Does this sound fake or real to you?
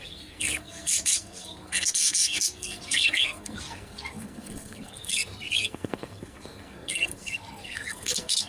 fake